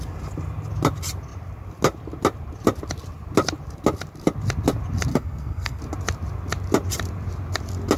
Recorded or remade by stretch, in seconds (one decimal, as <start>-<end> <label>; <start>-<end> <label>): 0.0-5.1 recorded; 5.1-5.8 remade; 5.8-8.0 recorded